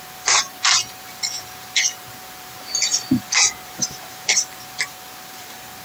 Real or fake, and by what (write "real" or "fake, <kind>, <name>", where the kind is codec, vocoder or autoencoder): fake, vocoder, BigVGAN v2